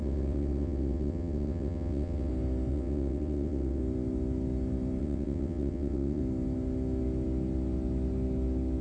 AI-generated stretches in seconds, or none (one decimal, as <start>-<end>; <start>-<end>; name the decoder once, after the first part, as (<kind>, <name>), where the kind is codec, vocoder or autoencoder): 0.0-2.3 (vocoder, WaveNeXt); 2.7-3.8; 5.0-6.2